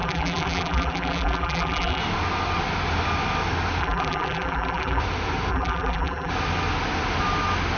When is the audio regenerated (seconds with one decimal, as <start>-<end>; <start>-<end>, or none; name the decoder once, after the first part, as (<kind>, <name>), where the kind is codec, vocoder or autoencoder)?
0.0-2.0 (vocoder, BigVGAN v2); 3.8-5.0; 5.5-6.3

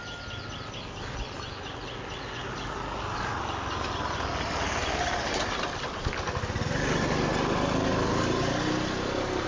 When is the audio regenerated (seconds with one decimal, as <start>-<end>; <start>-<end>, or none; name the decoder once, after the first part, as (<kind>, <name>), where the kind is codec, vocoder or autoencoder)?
none

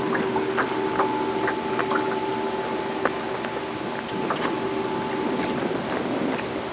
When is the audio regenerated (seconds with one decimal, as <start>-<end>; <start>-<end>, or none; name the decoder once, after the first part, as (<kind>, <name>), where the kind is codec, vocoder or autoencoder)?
none

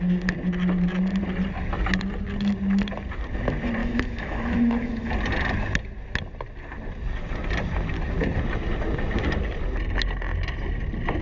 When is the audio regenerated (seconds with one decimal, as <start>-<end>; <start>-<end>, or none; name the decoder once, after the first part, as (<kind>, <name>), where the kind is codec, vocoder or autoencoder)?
3.8-5.1 (autoencoder, DAC-VAE)

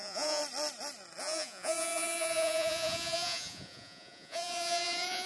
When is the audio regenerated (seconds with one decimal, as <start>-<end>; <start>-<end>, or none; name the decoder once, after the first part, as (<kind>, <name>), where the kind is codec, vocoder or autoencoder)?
0.0-0.4 (vocoder, Vocos); 1.2-5.3

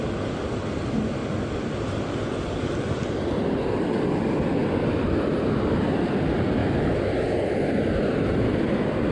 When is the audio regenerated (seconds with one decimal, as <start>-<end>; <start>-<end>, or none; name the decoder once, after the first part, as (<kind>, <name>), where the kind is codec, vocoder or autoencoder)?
none